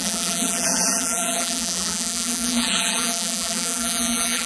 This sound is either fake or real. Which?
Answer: fake